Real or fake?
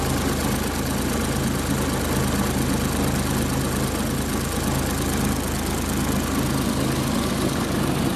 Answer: real